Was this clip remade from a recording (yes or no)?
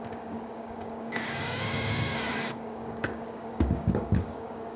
yes